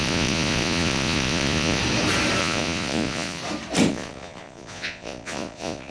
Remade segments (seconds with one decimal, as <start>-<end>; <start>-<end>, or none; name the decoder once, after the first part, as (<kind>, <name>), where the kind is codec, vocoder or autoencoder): 0.0-1.8 (vocoder, Vocos); 2.4-3.4; 3.9-5.9